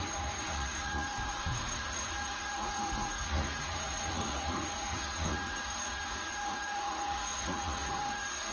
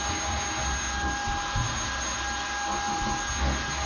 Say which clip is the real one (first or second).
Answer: second